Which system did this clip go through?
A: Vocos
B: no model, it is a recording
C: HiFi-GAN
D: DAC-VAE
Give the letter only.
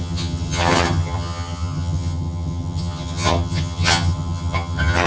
C